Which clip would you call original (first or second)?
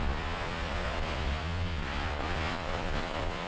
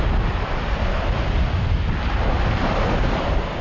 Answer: second